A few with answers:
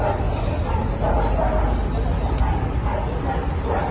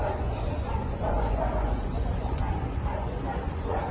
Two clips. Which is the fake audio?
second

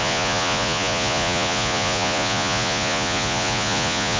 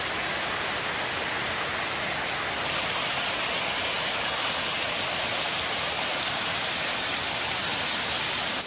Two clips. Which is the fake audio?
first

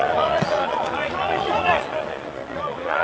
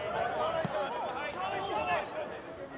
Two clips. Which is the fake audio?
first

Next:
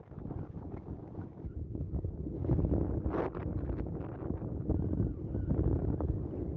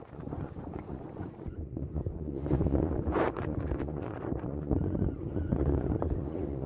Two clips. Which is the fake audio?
second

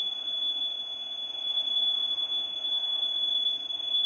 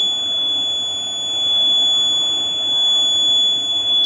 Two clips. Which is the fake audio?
first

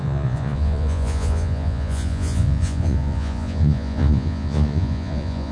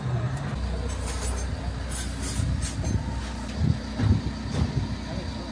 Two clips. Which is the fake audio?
first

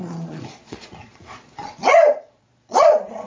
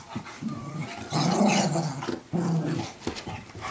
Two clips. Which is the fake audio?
first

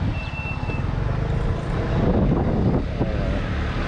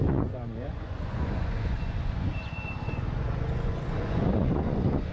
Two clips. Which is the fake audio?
second